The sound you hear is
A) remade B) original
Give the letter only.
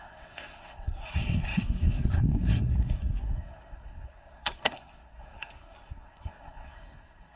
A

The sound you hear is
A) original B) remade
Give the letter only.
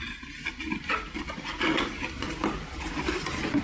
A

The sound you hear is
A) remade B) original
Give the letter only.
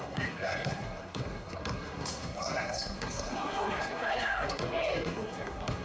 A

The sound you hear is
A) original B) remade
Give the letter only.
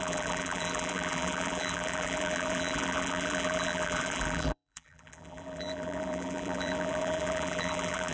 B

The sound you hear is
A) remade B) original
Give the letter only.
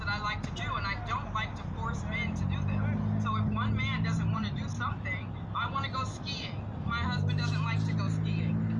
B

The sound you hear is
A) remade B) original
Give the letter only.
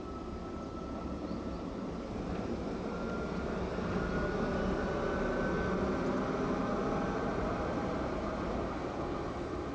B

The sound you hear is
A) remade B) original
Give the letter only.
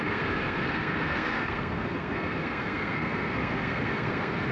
A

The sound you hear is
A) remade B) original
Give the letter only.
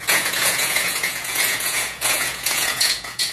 A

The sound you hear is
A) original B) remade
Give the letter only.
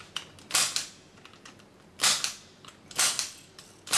A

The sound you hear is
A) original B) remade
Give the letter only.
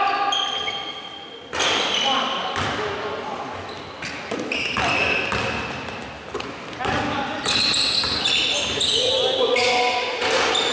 A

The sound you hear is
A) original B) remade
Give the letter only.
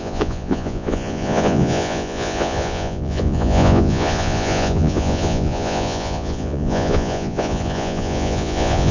B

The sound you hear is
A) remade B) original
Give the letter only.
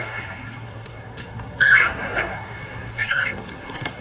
A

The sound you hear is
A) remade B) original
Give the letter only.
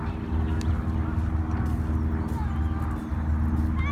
B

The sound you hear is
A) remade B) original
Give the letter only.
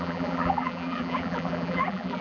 A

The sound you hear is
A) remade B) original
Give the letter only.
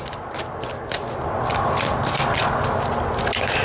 B